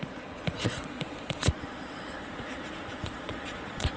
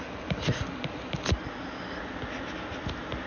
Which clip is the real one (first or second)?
second